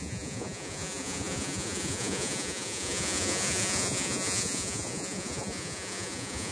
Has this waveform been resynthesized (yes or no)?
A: yes